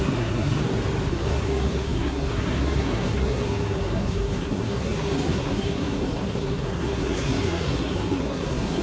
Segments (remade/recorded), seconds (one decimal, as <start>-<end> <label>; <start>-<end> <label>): 0.0-0.6 remade; 0.6-1.1 recorded; 1.1-8.8 remade